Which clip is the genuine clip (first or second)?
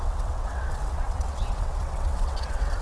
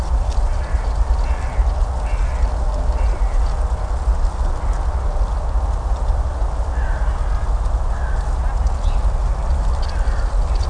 second